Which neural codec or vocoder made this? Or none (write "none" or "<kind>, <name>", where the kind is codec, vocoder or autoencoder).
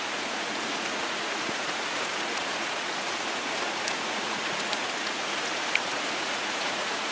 vocoder, Vocos